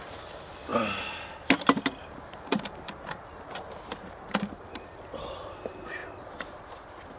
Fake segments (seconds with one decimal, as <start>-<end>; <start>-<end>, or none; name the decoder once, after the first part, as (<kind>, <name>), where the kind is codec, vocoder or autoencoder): 0.0-0.7 (vocoder, BigVGAN v2); 2.0-3.3; 3.8-6.0